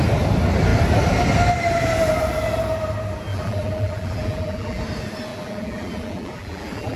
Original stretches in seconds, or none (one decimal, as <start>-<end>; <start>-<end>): 0.0-3.3; 4.8-5.3